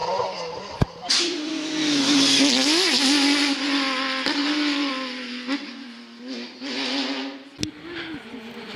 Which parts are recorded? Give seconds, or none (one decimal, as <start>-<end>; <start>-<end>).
1.5-4.4; 4.9-8.8